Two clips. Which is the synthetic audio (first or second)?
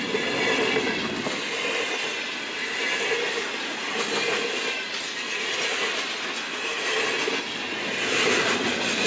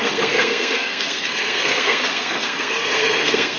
second